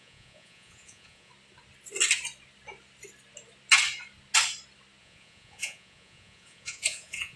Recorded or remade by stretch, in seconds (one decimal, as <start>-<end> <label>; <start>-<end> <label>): 0.0-1.3 remade; 1.3-5.0 recorded; 5.0-7.4 remade